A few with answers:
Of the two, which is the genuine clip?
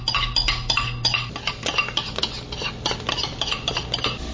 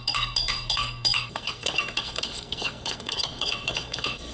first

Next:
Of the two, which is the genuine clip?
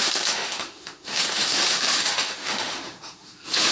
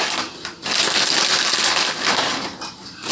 second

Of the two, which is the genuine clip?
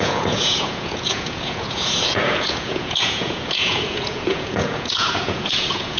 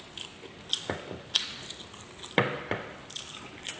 second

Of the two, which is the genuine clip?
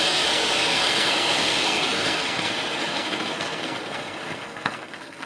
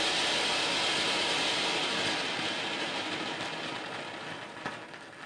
second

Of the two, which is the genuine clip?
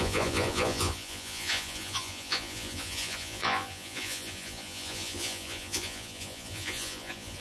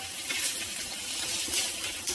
second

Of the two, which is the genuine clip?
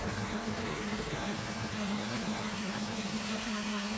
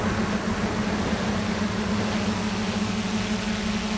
second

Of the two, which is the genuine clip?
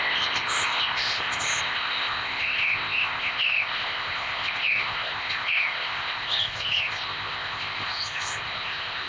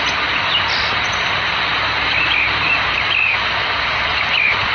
second